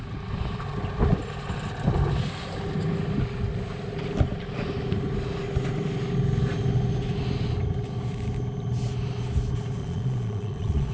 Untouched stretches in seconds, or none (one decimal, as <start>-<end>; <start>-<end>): 0.0-9.8